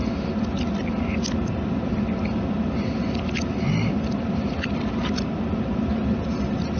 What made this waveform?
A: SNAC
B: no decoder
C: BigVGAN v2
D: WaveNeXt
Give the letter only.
B